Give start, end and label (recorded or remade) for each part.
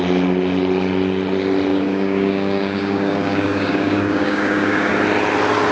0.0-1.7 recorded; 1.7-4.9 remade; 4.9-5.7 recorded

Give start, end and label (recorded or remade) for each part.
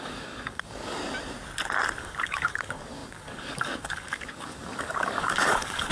0.0-1.0 remade; 1.0-2.0 recorded; 2.0-5.9 remade